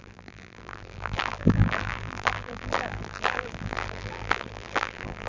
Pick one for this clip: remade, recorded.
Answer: remade